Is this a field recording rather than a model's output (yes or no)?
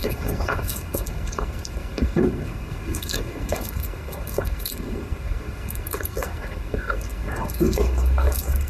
no